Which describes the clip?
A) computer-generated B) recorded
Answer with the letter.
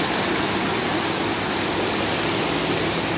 B